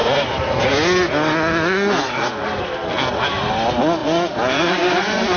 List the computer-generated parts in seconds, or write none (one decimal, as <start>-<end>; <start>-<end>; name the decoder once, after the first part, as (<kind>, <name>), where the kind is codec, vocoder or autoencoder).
0.0-0.7 (vocoder, BigVGAN v2); 4.0-5.4